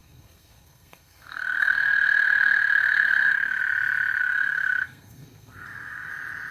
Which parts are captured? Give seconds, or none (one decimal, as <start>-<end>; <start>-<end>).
3.6-4.2; 6.1-6.5